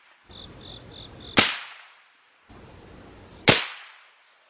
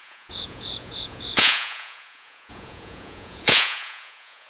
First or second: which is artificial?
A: second